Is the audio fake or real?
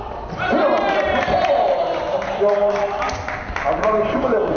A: fake